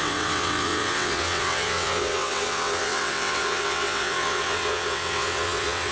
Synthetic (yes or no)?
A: yes